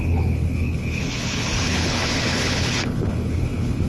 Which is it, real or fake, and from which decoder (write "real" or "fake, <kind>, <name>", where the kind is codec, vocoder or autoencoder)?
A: fake, codec, HILCodec